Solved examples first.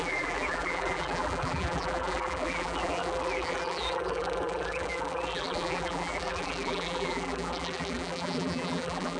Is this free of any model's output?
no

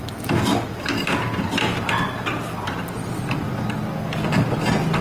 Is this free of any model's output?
yes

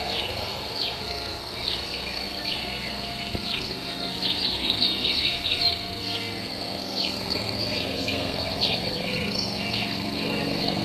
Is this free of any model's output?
no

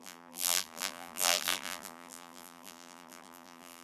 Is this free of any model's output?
no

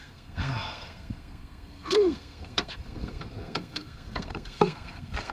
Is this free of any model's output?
no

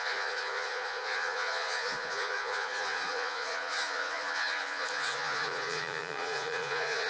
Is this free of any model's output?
no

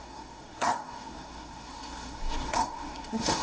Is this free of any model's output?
no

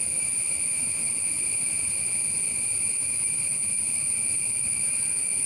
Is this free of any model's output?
yes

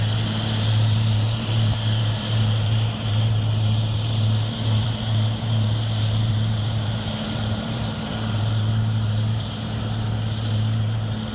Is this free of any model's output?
no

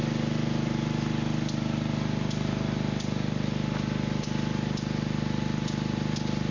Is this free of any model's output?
yes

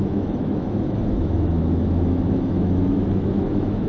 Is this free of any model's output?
no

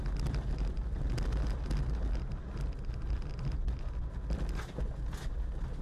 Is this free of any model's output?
yes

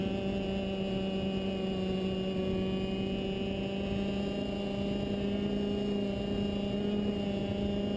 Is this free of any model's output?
yes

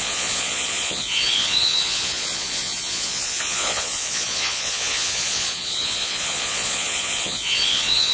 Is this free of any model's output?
no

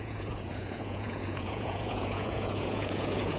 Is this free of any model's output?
no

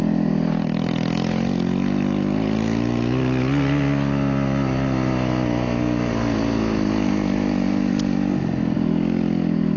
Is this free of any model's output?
yes